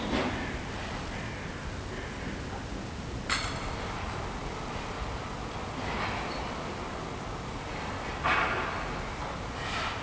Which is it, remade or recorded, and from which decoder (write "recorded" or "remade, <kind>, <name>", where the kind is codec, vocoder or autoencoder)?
recorded